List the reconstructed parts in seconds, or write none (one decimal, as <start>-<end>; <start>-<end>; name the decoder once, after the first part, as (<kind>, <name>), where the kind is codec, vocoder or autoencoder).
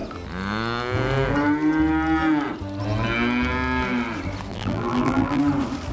4.5-5.4 (vocoder, BigVGAN v2)